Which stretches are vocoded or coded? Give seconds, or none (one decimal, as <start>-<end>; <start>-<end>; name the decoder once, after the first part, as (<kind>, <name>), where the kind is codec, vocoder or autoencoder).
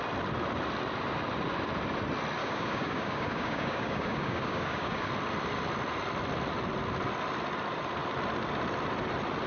2.4-5.1 (codec, DAC)